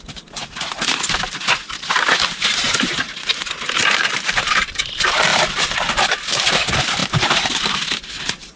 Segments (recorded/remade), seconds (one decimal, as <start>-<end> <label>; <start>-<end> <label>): 0.0-5.3 recorded; 5.3-6.0 remade; 6.0-8.6 recorded